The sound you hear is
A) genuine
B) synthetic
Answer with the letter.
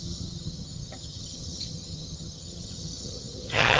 B